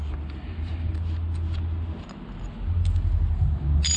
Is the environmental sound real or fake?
real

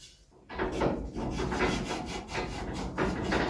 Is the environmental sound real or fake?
real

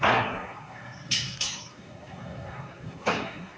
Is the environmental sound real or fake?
fake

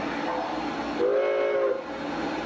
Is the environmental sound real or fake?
real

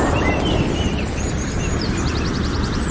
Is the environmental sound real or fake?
real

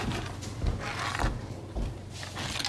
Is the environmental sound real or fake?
real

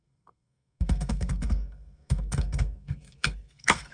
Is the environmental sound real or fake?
fake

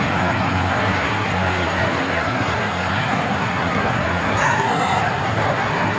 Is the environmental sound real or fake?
fake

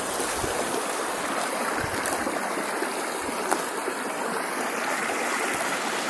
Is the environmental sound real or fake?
real